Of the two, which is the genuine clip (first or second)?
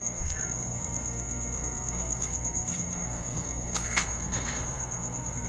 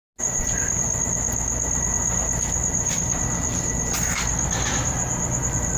second